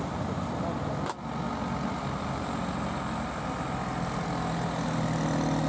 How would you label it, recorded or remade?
recorded